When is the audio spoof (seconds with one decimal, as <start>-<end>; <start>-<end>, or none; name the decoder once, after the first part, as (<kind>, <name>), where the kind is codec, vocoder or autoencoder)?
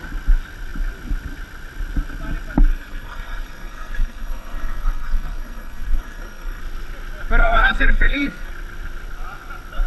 2.7-6.6 (codec, SNAC); 7.4-8.5